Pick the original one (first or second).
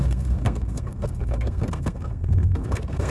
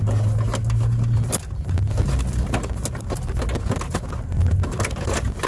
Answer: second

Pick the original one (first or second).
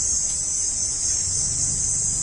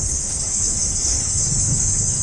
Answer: first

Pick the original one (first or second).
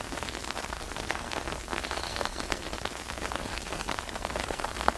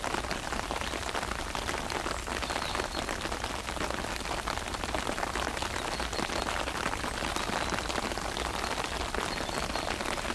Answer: second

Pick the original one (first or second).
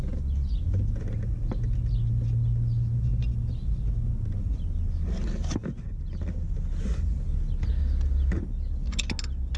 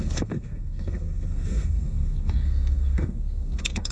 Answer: first